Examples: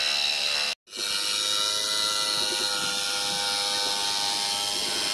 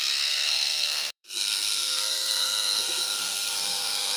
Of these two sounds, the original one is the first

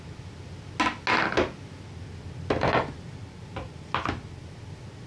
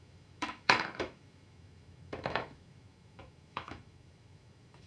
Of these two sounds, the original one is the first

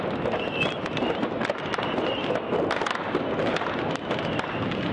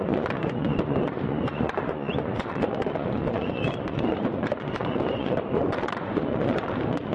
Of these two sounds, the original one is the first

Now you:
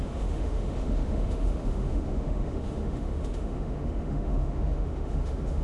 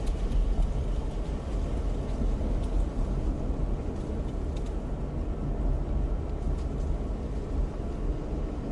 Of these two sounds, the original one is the second